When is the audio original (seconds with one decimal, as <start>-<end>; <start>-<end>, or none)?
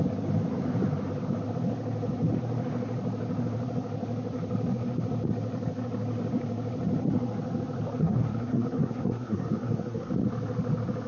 0.0-8.0; 10.1-11.1